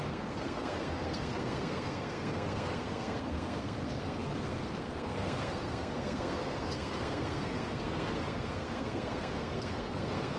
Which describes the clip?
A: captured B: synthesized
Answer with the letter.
B